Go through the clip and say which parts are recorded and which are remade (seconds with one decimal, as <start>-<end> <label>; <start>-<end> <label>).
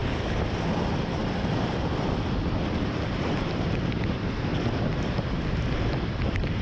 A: 0.0-4.0 remade; 4.0-4.5 recorded; 4.5-5.3 remade; 5.3-6.6 recorded